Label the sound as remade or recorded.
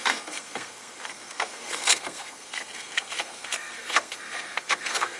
remade